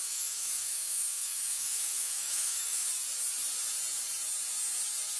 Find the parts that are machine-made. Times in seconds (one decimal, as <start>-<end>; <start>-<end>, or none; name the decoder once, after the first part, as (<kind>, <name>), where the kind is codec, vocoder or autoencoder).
0.0-2.9 (autoencoder, DAC-VAE)